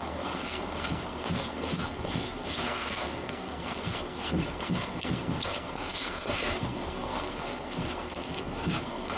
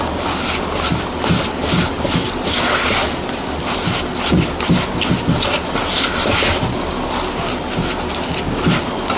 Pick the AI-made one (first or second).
first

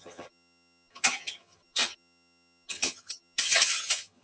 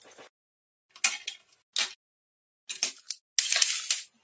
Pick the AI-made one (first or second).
first